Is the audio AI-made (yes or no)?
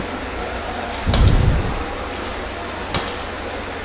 no